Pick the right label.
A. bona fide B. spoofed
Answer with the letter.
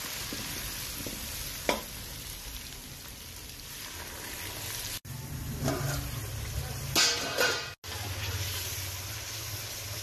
A